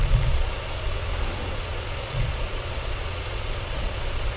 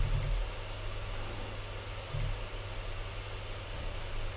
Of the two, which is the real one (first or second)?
second